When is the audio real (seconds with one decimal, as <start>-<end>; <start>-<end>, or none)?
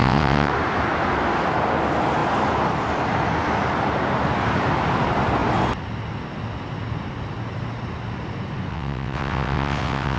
0.5-8.7